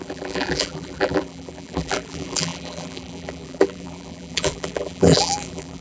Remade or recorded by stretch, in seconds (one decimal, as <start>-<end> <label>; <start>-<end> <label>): 0.0-5.8 remade